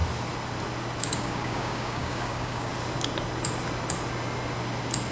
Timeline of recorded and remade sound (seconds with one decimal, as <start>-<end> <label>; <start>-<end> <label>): 0.0-1.0 recorded; 1.0-2.7 remade; 2.7-5.1 recorded